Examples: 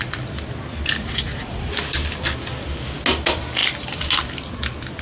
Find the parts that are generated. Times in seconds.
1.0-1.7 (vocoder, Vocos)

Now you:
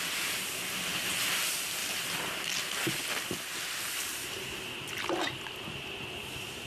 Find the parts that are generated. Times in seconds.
1.8-2.3 (vocoder, BigVGAN v2)